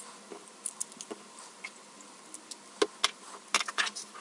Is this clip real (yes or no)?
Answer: yes